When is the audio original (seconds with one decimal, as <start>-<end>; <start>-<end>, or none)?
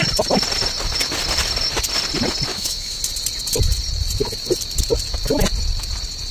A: 0.0-2.5; 3.0-6.3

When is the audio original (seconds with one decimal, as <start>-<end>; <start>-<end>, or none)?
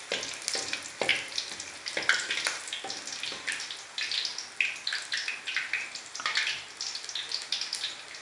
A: 0.0-8.2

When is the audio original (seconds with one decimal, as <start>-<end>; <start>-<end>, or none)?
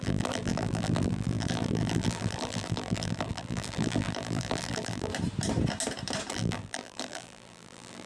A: 5.1-6.3